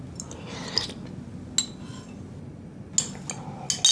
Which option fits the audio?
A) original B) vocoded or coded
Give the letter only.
A